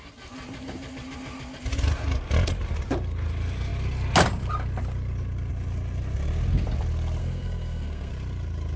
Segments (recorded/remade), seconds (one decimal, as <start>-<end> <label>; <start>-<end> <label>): 0.0-7.2 recorded; 7.2-8.1 remade; 8.1-8.8 recorded